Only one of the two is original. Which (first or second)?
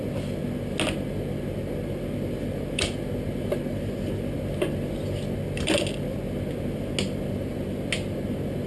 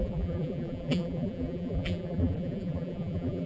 first